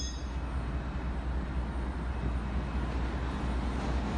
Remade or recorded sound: recorded